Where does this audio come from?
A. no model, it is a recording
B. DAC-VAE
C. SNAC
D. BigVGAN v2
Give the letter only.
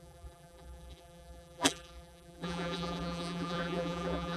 D